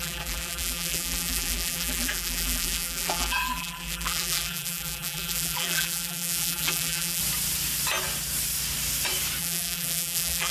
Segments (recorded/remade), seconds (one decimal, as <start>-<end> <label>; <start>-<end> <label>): 0.0-7.2 remade; 7.2-9.4 recorded; 9.4-10.5 remade